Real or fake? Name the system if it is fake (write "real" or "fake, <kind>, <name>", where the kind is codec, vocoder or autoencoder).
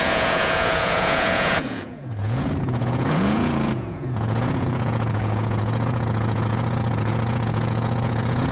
fake, vocoder, Vocos